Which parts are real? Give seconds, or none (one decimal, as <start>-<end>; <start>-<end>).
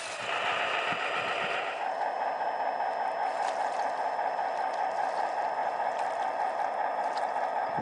0.0-7.8